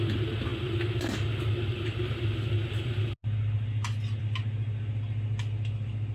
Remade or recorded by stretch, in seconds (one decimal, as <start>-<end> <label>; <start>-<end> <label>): 0.0-6.1 recorded